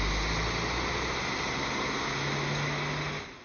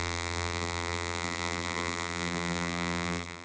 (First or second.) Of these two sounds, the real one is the first